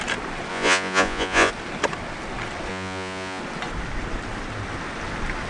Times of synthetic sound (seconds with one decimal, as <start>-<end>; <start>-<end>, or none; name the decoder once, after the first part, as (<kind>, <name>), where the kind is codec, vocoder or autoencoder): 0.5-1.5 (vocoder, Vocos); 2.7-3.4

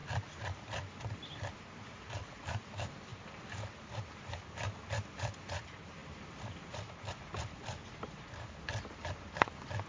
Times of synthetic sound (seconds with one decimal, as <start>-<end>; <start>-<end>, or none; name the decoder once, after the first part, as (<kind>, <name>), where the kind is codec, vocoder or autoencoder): none

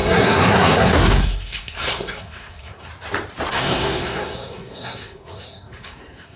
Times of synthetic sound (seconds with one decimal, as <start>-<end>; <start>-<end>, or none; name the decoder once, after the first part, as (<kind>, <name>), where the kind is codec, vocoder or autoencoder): 0.0-2.9 (codec, SNAC); 3.5-6.4

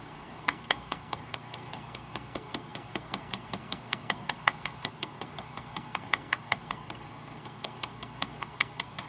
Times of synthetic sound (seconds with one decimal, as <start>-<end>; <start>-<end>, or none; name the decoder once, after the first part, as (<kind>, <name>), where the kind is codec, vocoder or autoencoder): 0.0-9.1 (codec, SNAC)